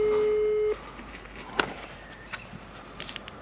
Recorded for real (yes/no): yes